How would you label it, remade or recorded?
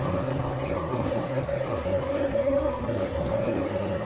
remade